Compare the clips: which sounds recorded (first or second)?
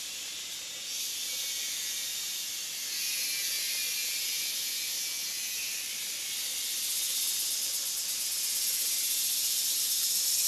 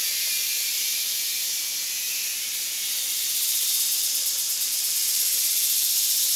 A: first